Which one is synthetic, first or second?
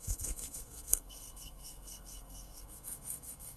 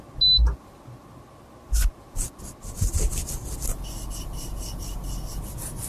first